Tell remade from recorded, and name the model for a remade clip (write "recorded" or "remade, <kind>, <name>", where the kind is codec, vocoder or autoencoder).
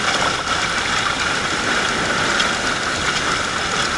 recorded